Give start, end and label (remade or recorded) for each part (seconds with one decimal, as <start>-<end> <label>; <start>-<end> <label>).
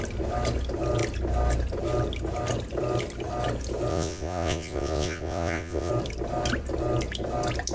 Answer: 0.0-3.9 recorded; 3.9-5.9 remade; 5.9-7.7 recorded